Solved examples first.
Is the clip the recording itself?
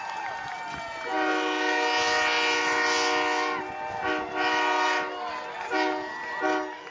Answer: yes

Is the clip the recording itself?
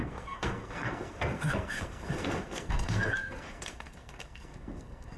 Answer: no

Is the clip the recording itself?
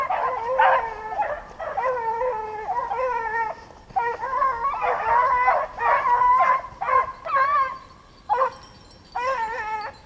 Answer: yes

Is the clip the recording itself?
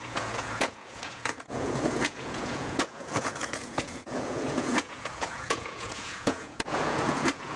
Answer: no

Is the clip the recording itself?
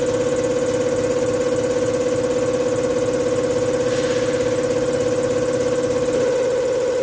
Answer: yes